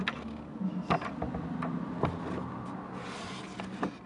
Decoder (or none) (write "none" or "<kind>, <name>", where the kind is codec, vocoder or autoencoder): none